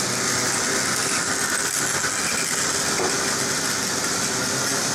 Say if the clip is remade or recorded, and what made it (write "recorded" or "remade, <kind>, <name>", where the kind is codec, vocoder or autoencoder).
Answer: recorded